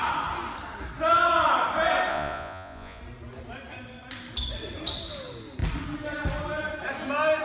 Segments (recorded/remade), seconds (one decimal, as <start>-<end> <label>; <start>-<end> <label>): 0.0-2.1 recorded; 2.1-3.0 remade; 3.0-7.4 recorded